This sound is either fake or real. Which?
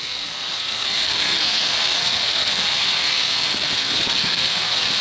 fake